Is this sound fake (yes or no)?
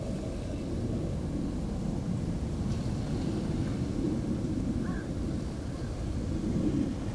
no